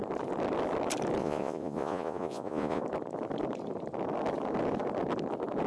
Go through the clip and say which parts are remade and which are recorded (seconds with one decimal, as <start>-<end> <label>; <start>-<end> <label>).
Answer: 0.0-1.2 recorded; 1.2-2.8 remade; 2.8-5.7 recorded